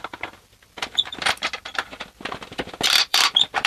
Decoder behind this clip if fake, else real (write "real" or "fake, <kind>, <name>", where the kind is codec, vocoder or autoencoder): fake, vocoder, BigVGAN v2